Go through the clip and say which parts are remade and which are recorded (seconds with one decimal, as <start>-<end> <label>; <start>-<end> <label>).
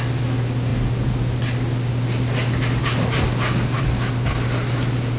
0.0-5.2 recorded